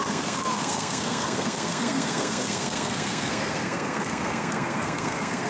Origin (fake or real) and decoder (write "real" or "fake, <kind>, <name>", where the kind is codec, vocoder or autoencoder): fake, codec, SNAC